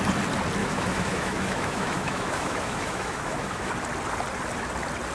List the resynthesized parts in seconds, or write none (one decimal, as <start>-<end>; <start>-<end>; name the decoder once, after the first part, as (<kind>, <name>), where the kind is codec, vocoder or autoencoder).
0.6-3.7 (autoencoder, DAC-VAE)